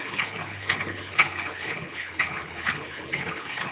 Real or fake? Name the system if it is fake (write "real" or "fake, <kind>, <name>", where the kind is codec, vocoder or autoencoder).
fake, codec, HILCodec